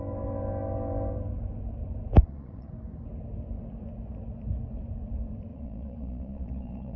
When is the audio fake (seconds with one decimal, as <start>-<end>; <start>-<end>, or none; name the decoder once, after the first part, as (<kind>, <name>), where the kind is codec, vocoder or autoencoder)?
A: 2.2-2.7 (vocoder, Vocos); 5.5-7.0